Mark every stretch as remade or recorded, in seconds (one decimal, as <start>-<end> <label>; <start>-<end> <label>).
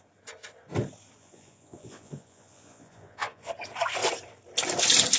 0.0-1.2 recorded; 1.2-3.5 remade; 3.5-5.2 recorded